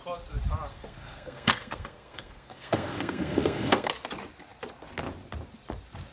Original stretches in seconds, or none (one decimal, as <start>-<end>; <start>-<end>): 0.0-0.7; 3.9-6.1